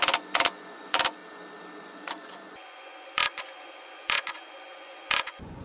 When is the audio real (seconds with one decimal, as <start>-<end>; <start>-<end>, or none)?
1.2-1.8